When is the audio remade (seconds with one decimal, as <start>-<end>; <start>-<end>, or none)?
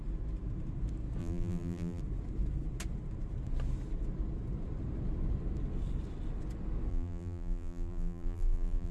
1.2-2.0; 6.9-8.9